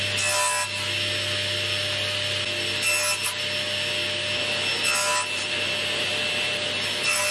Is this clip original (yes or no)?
yes